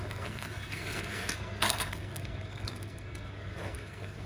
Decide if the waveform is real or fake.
fake